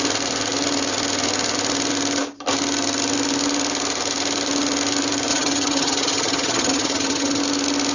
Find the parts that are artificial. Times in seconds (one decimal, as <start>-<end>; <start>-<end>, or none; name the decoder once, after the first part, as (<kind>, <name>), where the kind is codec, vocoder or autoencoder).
5.3-7.4 (vocoder, HiFi-GAN)